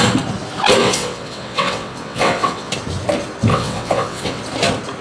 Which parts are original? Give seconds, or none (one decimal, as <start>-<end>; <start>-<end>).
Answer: 0.0-0.8; 2.7-3.5; 4.4-5.0